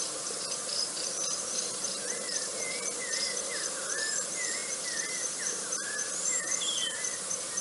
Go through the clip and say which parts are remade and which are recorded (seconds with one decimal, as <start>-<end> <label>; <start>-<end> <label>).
0.0-7.6 remade